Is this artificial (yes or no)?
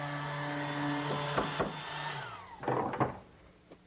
no